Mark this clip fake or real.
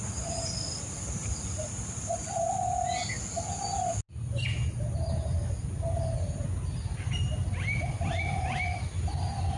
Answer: real